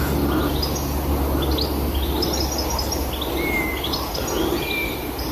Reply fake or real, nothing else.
real